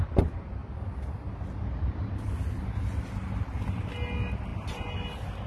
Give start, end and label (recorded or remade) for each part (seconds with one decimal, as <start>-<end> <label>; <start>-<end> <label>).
0.0-5.5 recorded